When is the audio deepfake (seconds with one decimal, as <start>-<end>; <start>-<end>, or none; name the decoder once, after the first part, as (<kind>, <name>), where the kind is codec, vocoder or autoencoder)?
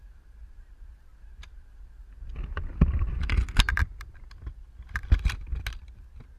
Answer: 0.0-5.5 (vocoder, BigVGAN v2)